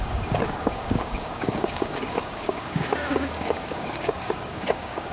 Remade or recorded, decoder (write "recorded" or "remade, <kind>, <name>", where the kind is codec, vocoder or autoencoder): remade, codec, DAC